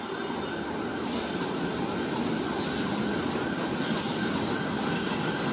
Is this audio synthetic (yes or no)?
no